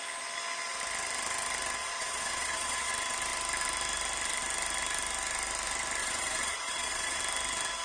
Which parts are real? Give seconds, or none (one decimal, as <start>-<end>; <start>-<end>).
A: 0.0-1.8; 2.9-6.0; 7.2-7.8